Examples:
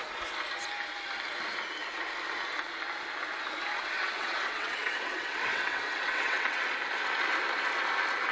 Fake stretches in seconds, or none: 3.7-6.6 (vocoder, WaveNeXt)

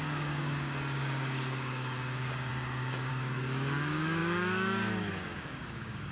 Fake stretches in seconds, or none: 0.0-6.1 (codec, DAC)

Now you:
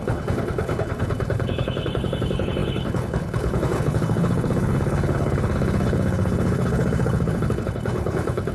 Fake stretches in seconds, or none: 0.0-8.5 (codec, HILCodec)

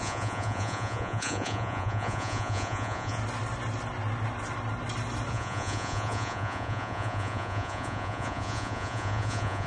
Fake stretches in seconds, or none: 0.0-3.2 (vocoder, Vocos); 5.3-9.7